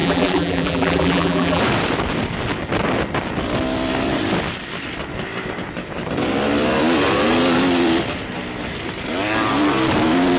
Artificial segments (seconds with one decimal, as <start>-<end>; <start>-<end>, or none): 0.0-1.6

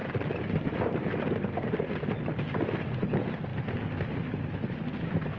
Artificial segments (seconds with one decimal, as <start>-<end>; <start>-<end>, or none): 0.0-1.7; 3.5-4.5